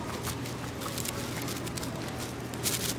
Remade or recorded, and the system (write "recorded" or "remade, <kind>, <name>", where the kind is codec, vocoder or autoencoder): recorded